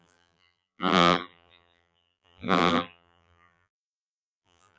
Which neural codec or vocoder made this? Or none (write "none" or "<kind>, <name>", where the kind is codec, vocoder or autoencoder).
vocoder, BigVGAN v2